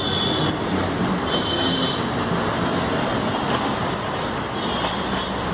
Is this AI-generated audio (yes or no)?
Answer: no